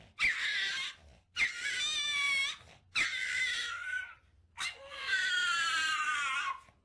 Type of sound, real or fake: real